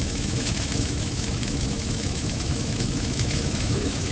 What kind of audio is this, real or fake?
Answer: fake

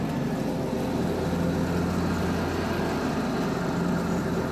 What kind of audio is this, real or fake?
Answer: real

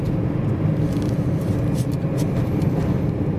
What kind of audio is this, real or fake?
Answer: real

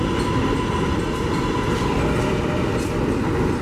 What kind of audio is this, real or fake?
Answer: real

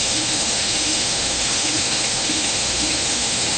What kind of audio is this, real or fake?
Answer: fake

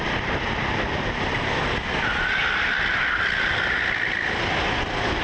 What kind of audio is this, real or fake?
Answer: real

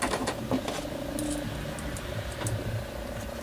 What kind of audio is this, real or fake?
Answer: real